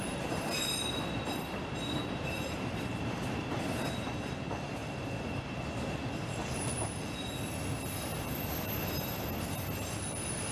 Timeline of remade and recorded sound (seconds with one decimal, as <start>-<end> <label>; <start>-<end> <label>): 0.0-2.0 recorded; 2.0-4.1 remade; 4.1-10.5 recorded